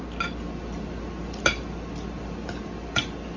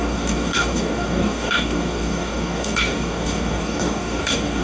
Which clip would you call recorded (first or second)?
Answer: first